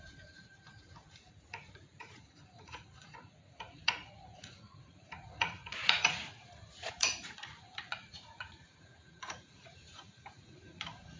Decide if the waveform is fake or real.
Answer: fake